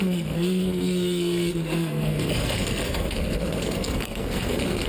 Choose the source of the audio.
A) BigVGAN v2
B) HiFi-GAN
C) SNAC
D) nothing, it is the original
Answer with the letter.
C